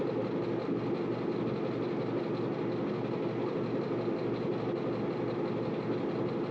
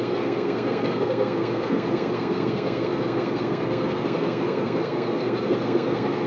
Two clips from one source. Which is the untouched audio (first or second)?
first